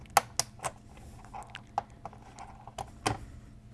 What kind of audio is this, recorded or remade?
recorded